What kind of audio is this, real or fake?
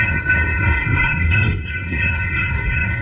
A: fake